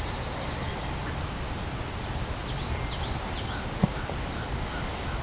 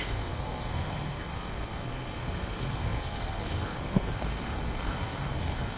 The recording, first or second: first